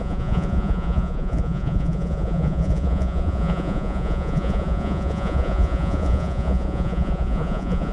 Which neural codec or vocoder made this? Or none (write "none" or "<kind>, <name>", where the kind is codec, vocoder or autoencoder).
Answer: vocoder, Vocos